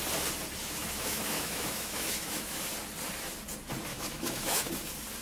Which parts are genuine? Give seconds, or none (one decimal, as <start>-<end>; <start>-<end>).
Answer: 0.0-0.6; 2.7-3.9; 4.7-5.2